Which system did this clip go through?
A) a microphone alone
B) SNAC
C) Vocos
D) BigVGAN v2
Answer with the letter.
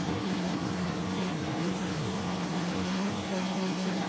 B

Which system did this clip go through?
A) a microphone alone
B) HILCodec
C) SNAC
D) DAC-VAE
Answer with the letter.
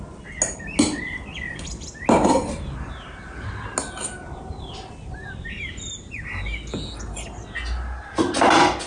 A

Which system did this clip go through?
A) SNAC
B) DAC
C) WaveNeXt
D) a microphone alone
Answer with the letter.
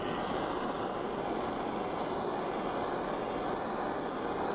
D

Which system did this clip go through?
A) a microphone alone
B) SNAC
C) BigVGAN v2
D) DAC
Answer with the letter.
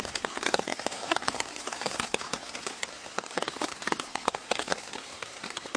B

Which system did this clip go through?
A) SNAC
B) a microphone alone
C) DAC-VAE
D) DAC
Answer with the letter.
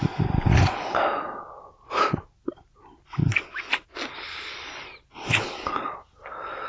B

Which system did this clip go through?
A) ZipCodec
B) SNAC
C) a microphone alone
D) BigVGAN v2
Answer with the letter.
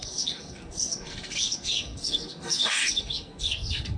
B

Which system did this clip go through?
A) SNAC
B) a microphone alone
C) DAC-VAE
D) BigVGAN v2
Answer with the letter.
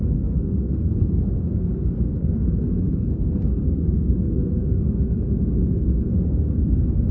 A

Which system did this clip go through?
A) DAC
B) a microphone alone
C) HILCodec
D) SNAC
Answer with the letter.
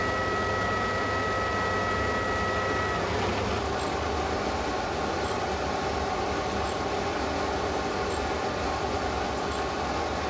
B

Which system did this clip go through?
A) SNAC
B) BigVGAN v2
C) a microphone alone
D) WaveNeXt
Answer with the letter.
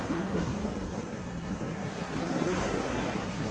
A